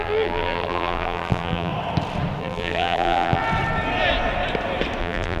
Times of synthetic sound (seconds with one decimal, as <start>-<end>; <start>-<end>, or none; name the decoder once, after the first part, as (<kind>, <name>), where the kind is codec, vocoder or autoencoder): 0.0-1.7 (vocoder, BigVGAN v2); 2.4-3.4; 5.0-5.4